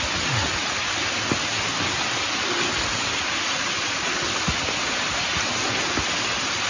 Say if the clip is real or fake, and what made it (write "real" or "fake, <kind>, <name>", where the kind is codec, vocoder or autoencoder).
real